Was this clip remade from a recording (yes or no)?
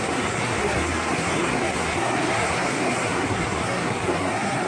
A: yes